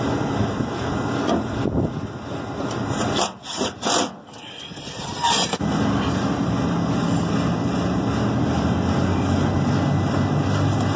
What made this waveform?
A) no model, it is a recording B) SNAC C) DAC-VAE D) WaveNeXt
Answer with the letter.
A